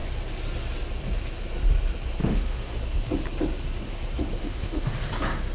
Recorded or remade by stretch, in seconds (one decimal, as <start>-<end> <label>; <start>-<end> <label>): 0.0-2.2 recorded; 2.2-2.8 remade; 2.8-4.4 recorded; 4.4-4.9 remade; 4.9-5.5 recorded